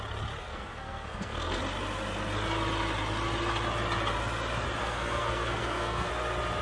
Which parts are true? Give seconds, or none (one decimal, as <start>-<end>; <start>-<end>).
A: 0.0-0.4; 1.6-4.8; 6.1-6.6